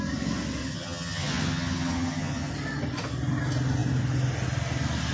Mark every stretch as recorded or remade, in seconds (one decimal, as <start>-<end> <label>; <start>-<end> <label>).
0.0-0.6 recorded; 0.6-2.5 remade; 2.5-5.1 recorded